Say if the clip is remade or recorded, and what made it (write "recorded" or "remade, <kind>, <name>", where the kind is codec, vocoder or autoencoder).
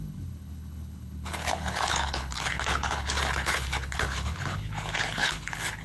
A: remade, codec, HILCodec